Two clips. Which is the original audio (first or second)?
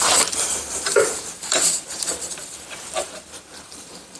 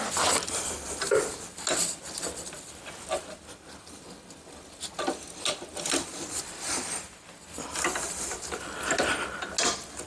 second